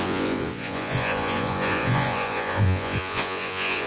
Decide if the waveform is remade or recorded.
remade